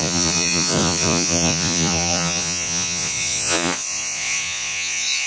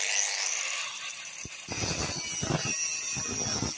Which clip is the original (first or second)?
second